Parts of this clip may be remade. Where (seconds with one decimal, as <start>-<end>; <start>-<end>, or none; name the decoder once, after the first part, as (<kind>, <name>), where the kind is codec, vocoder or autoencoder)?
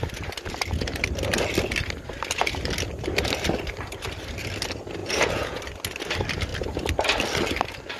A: 5.0-5.6 (vocoder, Vocos)